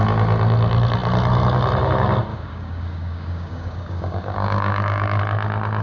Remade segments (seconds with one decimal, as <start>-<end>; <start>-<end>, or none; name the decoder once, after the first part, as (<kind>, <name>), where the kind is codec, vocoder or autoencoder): 2.3-5.2 (codec, DAC)